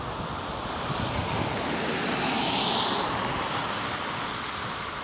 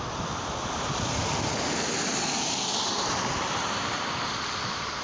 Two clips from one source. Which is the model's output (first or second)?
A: second